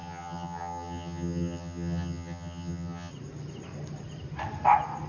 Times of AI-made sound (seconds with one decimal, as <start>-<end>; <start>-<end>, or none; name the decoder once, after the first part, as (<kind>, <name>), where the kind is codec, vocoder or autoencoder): 0.0-3.1 (vocoder, HiFi-GAN)